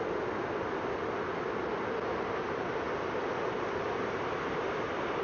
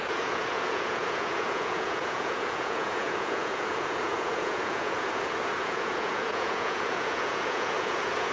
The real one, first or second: first